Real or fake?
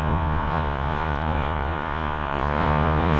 fake